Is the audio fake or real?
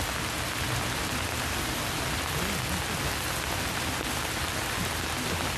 real